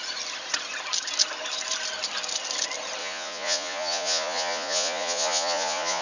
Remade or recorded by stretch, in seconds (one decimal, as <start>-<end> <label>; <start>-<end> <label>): 0.0-3.0 recorded; 3.0-6.0 remade